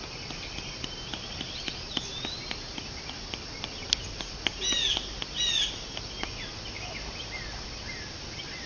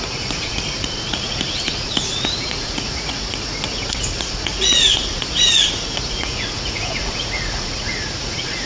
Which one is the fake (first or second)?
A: second